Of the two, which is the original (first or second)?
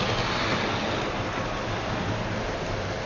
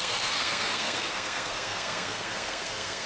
first